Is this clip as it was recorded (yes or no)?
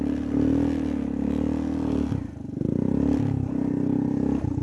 yes